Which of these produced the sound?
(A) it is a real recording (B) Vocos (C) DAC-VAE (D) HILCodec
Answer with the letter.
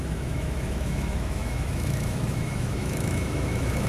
C